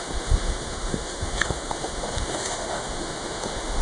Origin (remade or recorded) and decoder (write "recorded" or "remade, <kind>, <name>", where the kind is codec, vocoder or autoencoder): remade, autoencoder, DAC-VAE